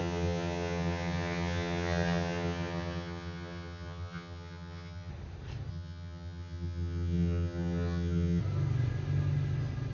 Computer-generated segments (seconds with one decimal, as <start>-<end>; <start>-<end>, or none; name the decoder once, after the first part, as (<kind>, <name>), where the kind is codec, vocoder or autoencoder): 0.0-5.1 (vocoder, HiFi-GAN); 5.7-8.4